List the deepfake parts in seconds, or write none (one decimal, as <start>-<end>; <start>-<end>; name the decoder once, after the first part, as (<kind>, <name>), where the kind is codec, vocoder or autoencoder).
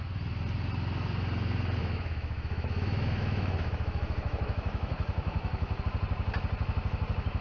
1.8-5.8 (autoencoder, DAC-VAE)